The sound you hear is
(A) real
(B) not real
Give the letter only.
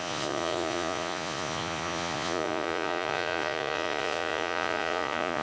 B